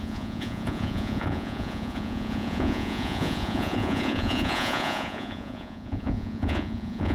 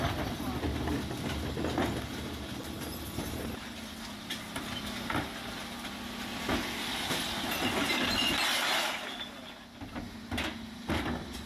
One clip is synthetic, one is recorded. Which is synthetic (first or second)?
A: first